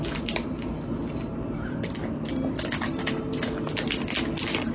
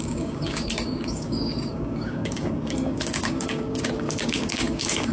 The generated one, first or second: second